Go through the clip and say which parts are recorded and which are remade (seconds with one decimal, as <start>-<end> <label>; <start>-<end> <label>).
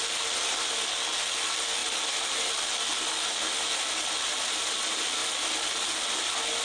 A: 0.0-6.6 recorded